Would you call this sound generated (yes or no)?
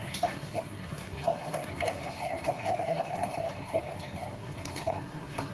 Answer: yes